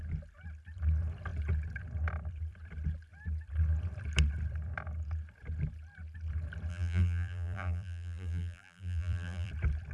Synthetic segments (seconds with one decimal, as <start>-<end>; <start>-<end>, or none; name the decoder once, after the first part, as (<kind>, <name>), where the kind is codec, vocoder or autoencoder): 6.7-9.5 (vocoder, BigVGAN v2)